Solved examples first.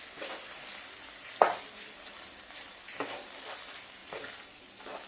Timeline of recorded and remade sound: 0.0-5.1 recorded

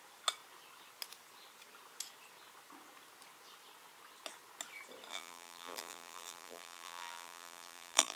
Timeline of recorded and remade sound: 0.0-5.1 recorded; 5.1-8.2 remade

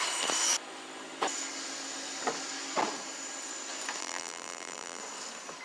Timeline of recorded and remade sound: 0.0-4.0 recorded; 4.0-5.0 remade; 5.0-5.6 recorded

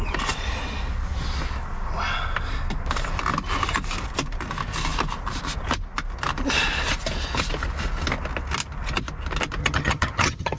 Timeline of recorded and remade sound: 0.0-9.6 recorded; 9.6-10.6 remade

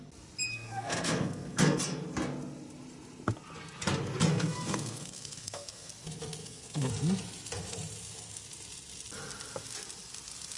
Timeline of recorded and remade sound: 0.0-0.5 recorded; 0.5-1.8 remade; 1.8-4.3 recorded; 4.3-5.9 remade; 5.9-6.4 recorded; 6.4-6.9 remade; 6.9-10.6 recorded

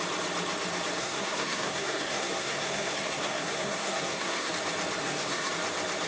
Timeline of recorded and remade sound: 0.0-1.0 recorded; 1.0-4.5 remade; 4.5-5.0 recorded; 5.0-5.5 remade; 5.5-6.1 recorded

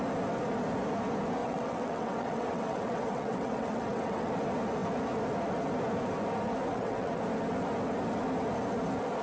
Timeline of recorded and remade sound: 0.0-1.4 recorded; 1.4-4.3 remade; 4.3-6.7 recorded; 6.7-7.2 remade; 7.2-9.2 recorded

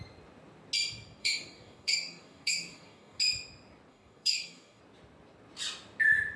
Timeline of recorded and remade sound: 0.0-1.2 recorded; 1.2-3.2 remade; 3.2-3.9 recorded; 3.9-4.8 remade; 4.8-6.4 recorded